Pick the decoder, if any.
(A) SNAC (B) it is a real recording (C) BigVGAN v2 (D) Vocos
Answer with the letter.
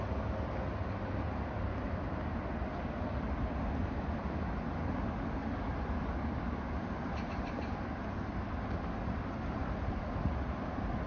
B